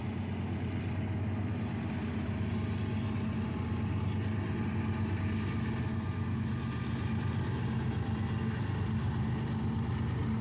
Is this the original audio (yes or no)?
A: yes